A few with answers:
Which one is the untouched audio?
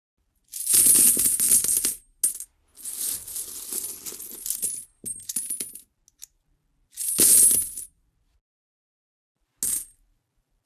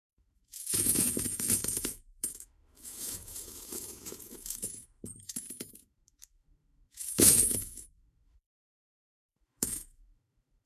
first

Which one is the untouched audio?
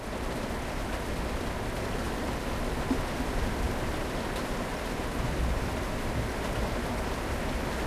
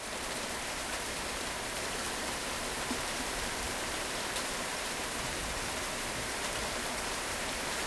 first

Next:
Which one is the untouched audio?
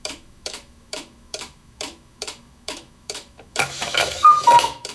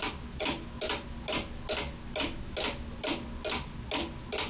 second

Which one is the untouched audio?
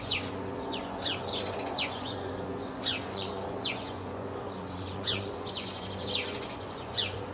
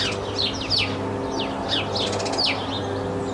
second